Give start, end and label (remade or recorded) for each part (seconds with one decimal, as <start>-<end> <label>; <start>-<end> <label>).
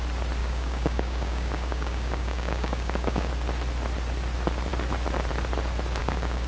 0.0-0.4 recorded; 0.4-3.3 remade; 3.3-6.0 recorded; 6.0-6.5 remade